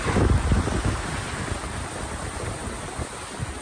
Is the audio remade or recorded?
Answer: recorded